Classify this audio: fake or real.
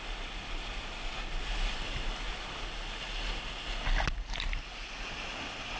real